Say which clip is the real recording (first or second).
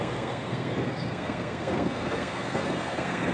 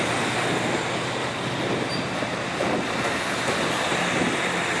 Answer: second